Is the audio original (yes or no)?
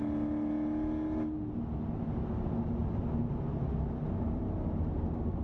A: yes